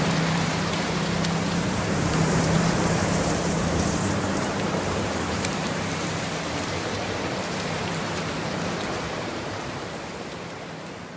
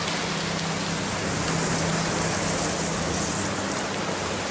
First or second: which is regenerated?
first